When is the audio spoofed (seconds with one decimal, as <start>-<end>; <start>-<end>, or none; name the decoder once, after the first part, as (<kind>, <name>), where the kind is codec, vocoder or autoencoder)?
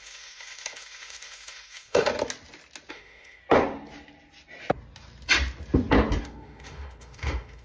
0.0-2.1 (autoencoder, DAC-VAE); 2.9-3.4; 6.2-7.6